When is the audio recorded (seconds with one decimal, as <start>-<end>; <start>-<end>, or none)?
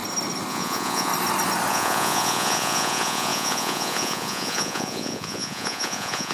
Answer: 0.0-0.5; 1.1-1.7